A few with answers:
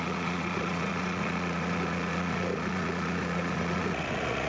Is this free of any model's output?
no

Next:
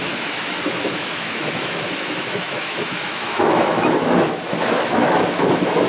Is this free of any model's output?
no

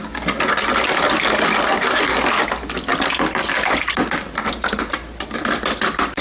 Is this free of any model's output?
yes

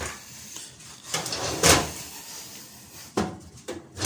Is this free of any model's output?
no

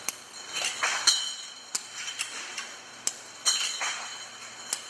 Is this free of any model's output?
yes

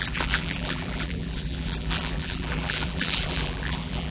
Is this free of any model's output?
no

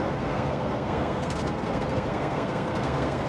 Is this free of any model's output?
no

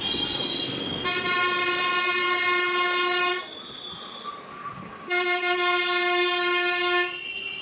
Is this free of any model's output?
yes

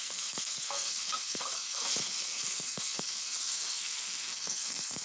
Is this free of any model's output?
no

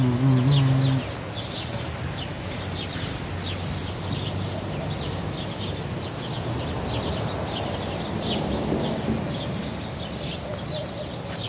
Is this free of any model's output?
yes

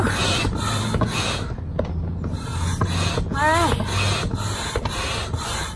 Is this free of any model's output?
yes